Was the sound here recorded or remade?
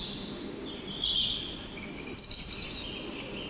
recorded